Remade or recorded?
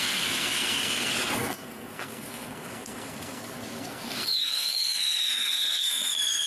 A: remade